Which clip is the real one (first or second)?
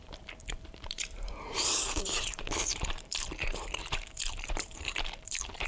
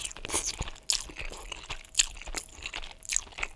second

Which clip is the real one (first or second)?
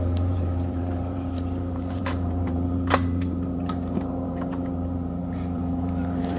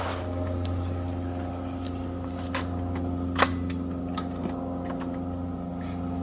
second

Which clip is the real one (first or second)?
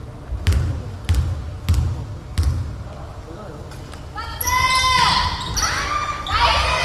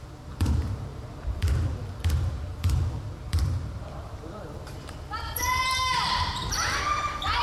first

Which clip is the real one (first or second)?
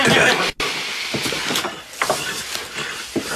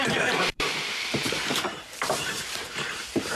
first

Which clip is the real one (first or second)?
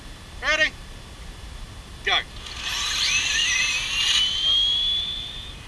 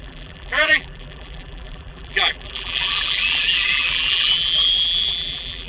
first